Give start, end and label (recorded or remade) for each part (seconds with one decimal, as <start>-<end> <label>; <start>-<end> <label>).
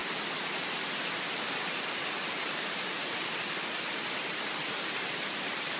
0.0-5.8 recorded